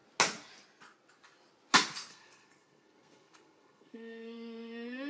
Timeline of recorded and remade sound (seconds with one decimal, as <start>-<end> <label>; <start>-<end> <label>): 0.0-2.1 recorded; 2.1-5.1 remade